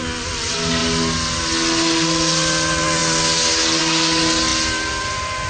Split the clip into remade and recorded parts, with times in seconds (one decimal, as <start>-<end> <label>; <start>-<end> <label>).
0.0-5.5 recorded